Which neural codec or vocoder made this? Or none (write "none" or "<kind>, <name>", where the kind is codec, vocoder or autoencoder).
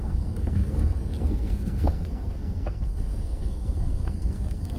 codec, SNAC